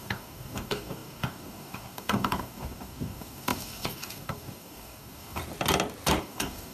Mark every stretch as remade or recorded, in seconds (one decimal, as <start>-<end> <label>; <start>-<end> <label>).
0.0-5.4 remade; 5.4-6.2 recorded; 6.2-6.7 remade